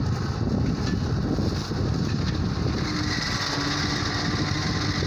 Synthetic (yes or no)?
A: no